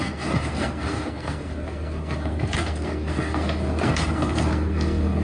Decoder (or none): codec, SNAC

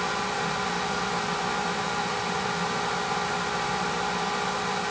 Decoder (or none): none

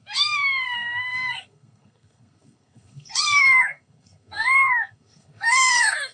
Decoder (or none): codec, SNAC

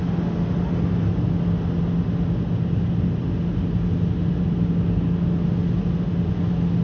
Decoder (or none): none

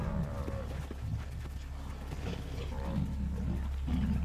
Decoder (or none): none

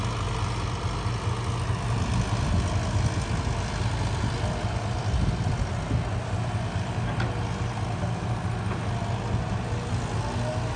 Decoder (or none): none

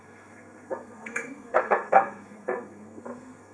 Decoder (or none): codec, SNAC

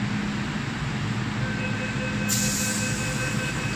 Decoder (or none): none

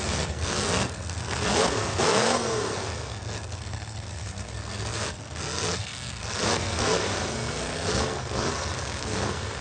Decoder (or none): codec, SNAC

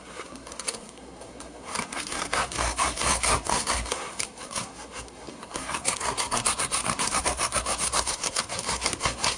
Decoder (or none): codec, SNAC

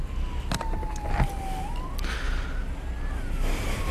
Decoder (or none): none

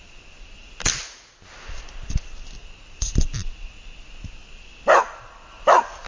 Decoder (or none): none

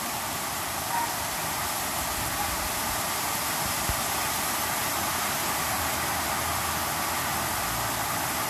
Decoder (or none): none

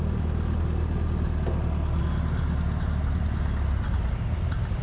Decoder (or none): none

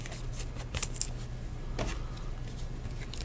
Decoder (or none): none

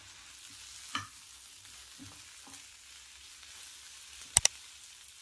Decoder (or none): none